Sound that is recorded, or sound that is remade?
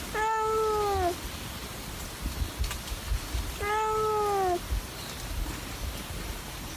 recorded